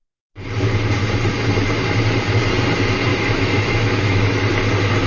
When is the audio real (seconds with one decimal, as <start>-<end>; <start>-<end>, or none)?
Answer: 0.0-3.1; 4.2-5.1